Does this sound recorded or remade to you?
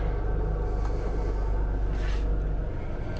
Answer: recorded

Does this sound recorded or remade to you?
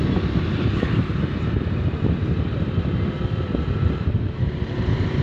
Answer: recorded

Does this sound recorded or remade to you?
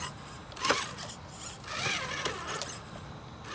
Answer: recorded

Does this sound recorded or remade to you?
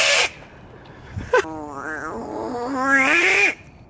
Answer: recorded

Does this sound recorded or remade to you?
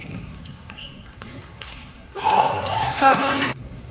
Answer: remade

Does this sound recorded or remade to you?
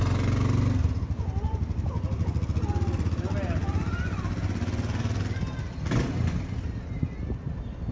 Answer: recorded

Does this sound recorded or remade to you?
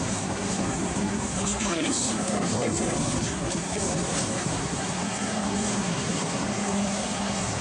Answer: remade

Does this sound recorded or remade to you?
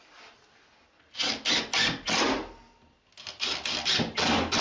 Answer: recorded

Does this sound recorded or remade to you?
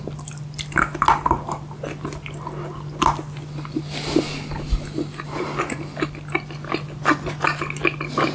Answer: recorded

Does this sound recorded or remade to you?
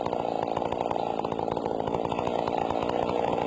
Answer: recorded